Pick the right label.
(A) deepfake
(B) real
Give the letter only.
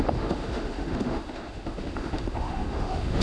A